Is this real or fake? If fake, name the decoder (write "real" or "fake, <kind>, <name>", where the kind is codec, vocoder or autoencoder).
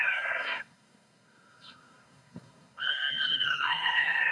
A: fake, codec, SNAC